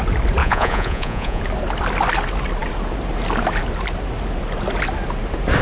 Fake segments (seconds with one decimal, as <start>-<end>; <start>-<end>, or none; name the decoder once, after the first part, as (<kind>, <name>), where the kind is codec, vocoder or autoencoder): 0.4-1.4 (vocoder, Vocos)